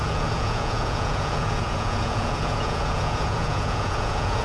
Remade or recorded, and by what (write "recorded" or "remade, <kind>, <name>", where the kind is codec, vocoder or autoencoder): remade, vocoder, Vocos